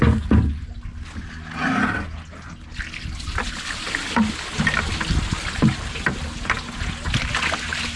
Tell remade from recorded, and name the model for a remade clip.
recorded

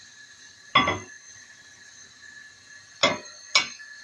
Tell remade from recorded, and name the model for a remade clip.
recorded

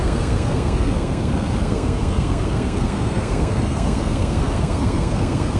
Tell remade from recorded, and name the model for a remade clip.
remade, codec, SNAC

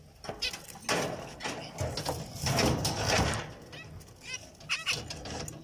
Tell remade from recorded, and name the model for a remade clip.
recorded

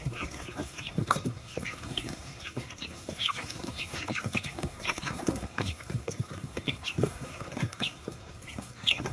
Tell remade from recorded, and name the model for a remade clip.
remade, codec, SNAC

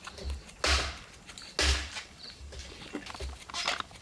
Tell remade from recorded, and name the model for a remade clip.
recorded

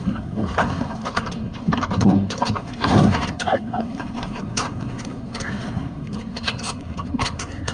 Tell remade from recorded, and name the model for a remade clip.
remade, codec, SNAC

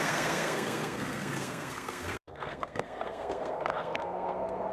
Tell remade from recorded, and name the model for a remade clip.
remade, codec, SNAC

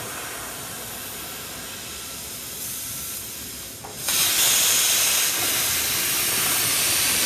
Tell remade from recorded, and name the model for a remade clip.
recorded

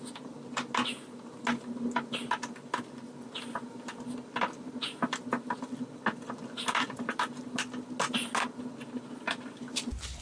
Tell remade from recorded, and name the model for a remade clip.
recorded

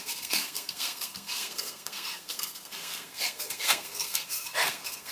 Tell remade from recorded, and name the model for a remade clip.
remade, codec, SNAC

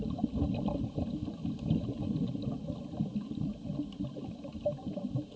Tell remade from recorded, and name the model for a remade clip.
recorded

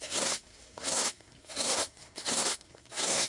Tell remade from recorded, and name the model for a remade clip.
remade, codec, SNAC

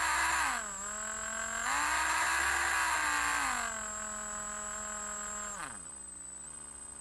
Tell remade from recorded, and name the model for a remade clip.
recorded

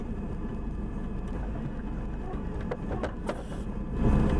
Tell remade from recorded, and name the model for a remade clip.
recorded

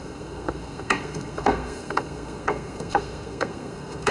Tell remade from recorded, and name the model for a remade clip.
remade, codec, SNAC